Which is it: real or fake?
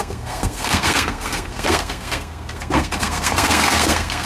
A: fake